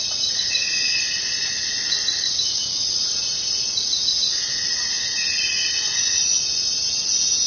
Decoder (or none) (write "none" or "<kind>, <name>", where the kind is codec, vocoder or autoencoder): vocoder, Vocos